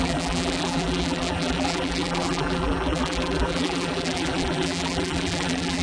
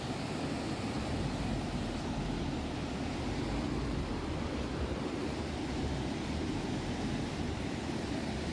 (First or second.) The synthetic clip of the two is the first